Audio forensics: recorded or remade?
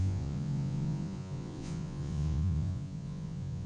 remade